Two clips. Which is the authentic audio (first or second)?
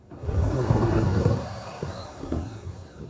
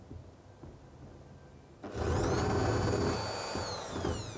second